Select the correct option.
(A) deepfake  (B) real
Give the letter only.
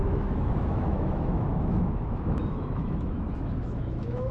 A